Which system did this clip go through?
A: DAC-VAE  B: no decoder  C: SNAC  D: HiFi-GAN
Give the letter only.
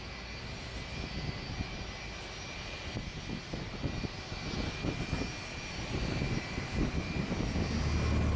B